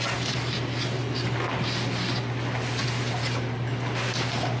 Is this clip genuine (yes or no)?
yes